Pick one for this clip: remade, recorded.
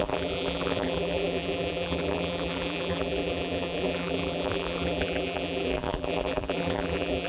remade